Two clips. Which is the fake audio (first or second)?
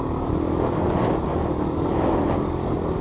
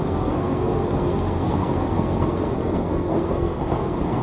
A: second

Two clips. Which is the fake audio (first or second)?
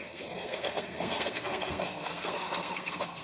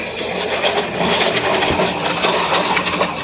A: first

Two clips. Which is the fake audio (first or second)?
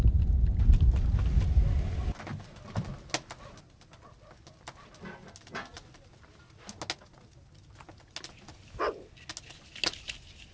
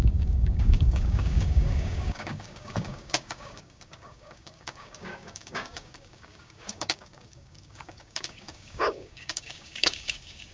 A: second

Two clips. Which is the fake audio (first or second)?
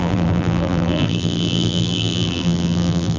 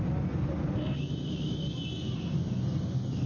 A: first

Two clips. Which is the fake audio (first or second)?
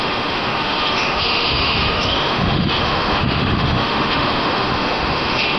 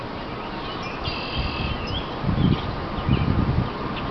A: first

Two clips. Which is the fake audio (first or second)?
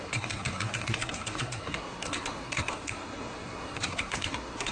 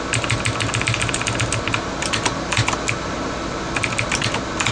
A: first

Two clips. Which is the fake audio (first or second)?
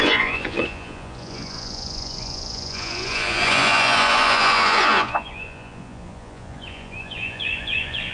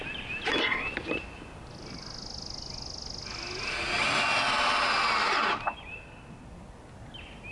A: first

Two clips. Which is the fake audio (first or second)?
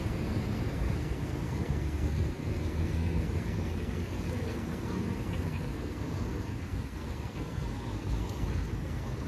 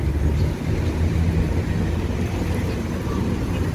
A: first